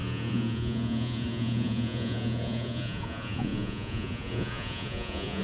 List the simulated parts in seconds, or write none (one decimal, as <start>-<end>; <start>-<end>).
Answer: 0.0-5.4